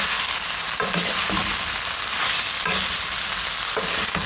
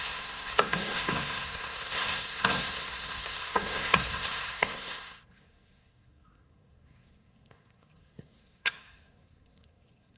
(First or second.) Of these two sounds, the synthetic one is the second